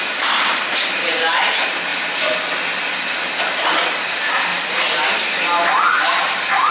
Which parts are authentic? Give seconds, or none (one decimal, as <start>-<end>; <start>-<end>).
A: 0.0-6.7